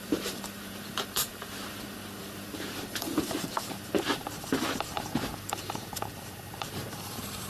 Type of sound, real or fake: fake